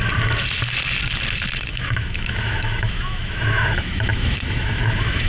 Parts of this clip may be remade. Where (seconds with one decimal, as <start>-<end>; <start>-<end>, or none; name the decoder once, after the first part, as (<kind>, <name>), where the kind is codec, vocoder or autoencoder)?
1.7-5.3 (autoencoder, DAC-VAE)